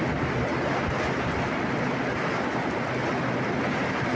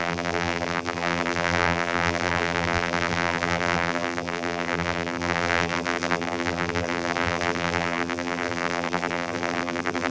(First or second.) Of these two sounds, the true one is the first